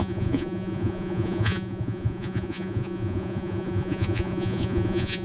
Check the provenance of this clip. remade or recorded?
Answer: remade